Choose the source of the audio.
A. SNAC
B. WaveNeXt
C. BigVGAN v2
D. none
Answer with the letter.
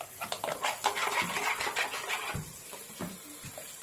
C